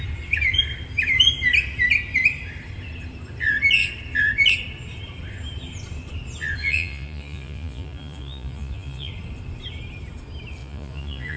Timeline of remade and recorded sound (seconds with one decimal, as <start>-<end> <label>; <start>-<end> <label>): 0.0-6.6 recorded; 6.6-9.1 remade; 9.1-10.6 recorded; 10.6-11.4 remade